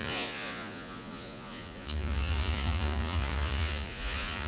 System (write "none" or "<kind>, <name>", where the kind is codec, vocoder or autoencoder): vocoder, Vocos